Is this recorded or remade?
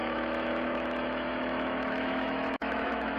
remade